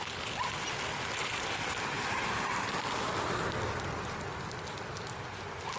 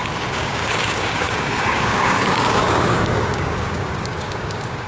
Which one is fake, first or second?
second